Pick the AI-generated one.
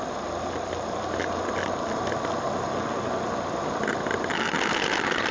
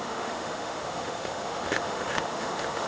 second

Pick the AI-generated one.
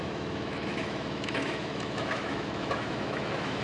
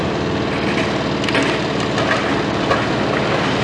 first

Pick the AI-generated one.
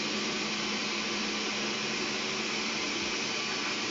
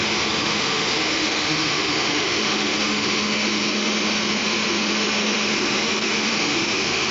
second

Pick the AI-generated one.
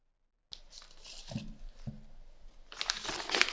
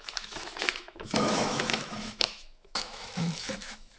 second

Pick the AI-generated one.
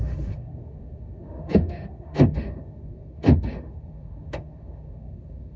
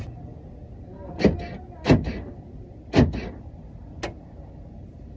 first